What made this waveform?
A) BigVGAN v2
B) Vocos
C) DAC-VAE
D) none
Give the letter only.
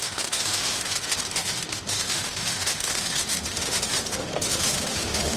C